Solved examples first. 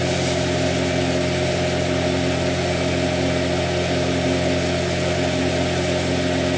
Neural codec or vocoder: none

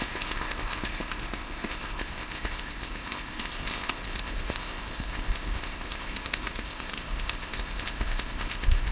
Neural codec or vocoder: codec, ZipCodec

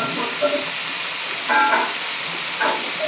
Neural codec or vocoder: none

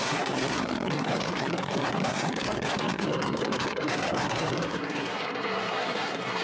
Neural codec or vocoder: codec, SNAC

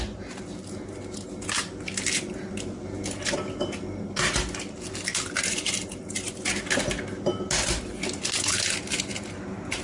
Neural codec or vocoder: none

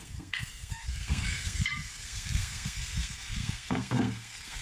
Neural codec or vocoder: codec, SNAC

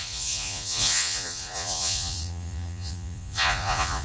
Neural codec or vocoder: vocoder, Vocos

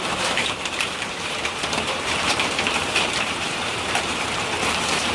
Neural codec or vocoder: vocoder, BigVGAN v2